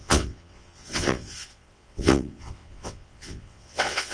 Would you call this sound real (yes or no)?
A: no